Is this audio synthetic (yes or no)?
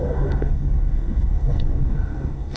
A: yes